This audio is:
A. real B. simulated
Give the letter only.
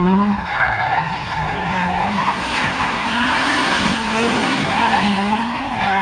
B